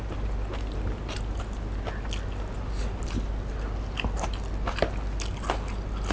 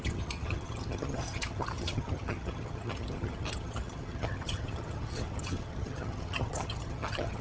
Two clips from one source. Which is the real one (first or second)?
first